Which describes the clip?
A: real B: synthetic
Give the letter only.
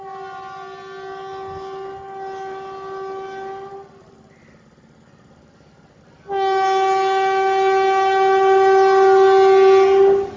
A